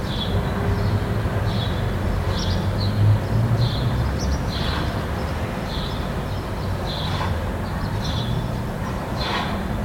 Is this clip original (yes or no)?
yes